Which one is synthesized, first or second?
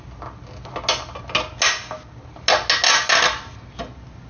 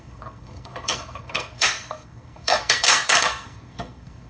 second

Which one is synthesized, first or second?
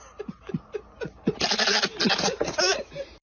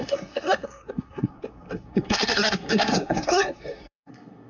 second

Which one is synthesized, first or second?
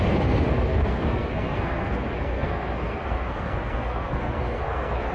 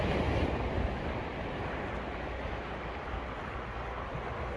first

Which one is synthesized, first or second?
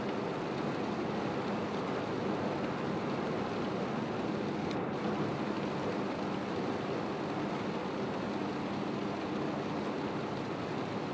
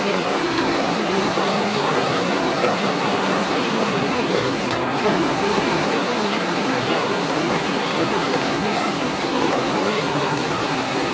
second